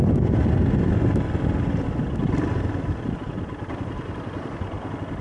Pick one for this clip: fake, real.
real